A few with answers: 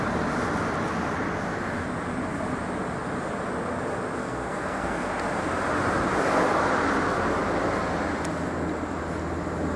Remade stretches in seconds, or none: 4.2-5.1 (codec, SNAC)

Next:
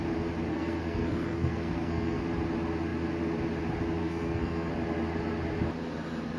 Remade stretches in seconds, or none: 0.5-2.2 (codec, SNAC); 4.0-4.7